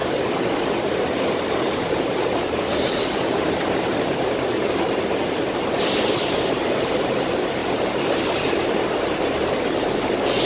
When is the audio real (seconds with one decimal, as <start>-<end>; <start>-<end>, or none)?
0.0-1.5